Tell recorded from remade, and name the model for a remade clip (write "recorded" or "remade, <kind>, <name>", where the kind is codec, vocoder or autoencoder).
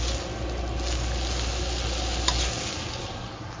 recorded